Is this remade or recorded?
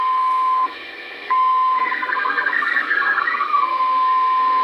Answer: remade